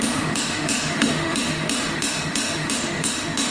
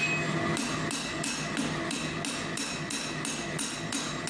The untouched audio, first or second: second